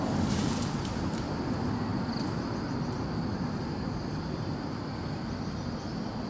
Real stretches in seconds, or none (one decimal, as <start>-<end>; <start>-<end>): 0.0-6.3